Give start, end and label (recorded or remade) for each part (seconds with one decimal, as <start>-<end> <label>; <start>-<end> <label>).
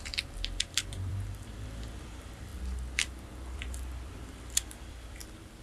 0.0-5.6 remade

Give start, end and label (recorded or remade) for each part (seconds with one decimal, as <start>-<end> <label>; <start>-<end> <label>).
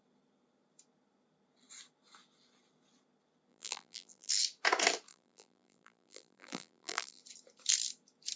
0.0-3.5 recorded; 3.5-4.3 remade; 4.3-5.1 recorded; 5.1-7.2 remade; 7.2-8.4 recorded